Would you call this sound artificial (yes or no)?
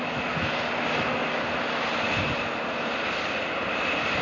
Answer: no